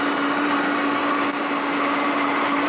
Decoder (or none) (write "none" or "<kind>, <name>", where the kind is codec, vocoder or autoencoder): none